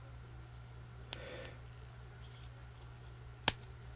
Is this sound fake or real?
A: real